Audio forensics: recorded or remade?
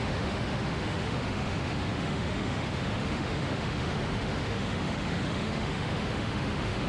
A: remade